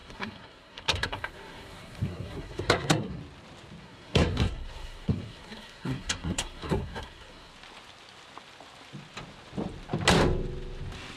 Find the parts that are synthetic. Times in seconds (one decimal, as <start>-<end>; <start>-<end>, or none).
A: 0.0-3.2; 3.8-7.5